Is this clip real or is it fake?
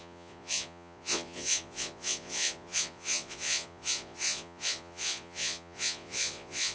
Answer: fake